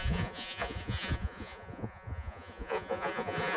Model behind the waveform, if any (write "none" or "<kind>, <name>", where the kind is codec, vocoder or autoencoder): vocoder, Vocos